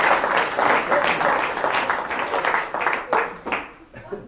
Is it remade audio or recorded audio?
recorded